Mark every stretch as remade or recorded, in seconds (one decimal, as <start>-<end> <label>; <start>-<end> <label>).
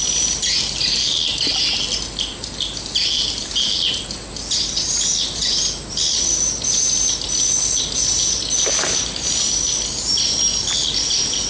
0.0-11.5 recorded